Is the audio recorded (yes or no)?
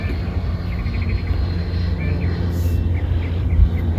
yes